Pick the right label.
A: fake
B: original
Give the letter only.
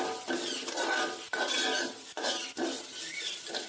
B